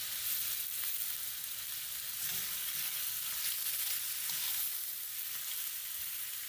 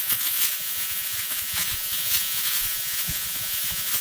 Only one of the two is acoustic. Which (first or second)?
first